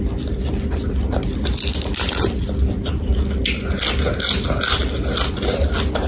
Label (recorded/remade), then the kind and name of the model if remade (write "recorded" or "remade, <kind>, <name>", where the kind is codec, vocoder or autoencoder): recorded